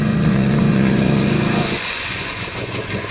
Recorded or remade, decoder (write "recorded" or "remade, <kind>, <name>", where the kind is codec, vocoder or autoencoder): remade, vocoder, Vocos